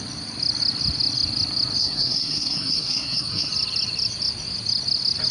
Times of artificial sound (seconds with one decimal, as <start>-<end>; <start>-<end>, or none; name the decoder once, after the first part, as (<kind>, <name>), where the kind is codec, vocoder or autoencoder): 1.8-3.5 (codec, SNAC)